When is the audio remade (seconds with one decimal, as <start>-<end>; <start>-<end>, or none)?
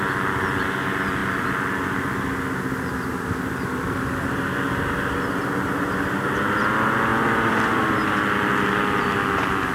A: 7.1-7.8